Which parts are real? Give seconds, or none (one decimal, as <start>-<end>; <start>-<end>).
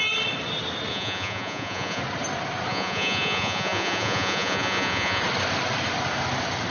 0.0-0.9; 2.0-2.7; 5.2-6.7